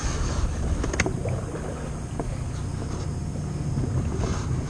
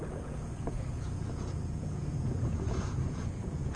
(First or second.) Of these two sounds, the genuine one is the first